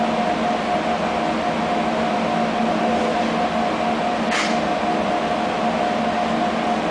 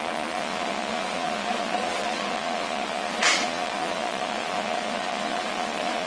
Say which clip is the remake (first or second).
second